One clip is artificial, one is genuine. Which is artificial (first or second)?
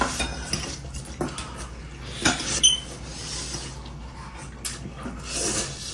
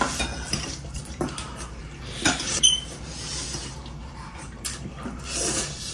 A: second